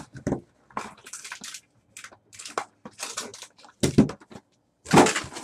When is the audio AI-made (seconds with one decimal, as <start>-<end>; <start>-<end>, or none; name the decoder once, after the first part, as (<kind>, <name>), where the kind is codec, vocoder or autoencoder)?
none